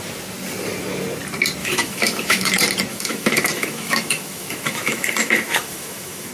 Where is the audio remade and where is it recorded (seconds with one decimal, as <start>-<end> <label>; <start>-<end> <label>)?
0.0-1.6 recorded; 1.6-2.5 remade; 2.5-2.9 recorded; 2.9-6.3 remade